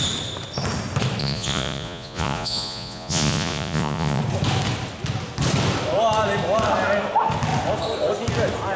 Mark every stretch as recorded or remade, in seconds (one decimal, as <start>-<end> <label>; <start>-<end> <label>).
0.0-1.2 recorded; 1.2-4.2 remade; 4.2-8.8 recorded